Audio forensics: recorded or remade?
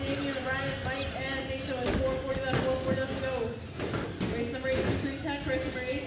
recorded